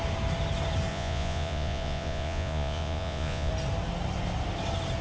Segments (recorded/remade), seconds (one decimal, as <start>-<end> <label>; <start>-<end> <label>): 0.0-0.9 recorded; 0.9-3.5 remade; 3.5-5.0 recorded